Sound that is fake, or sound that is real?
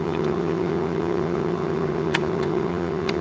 fake